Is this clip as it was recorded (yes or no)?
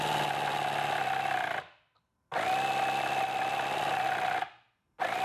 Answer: yes